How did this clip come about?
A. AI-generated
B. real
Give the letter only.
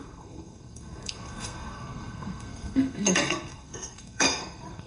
A